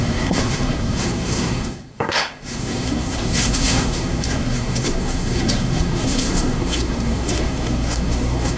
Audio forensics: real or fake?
fake